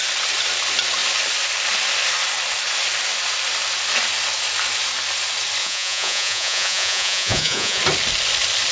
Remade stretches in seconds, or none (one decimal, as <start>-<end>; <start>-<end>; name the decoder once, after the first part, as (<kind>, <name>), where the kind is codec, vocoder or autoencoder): 5.6-7.8 (vocoder, Vocos)